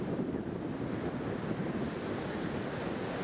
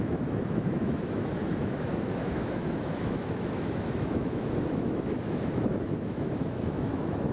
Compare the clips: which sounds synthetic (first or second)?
second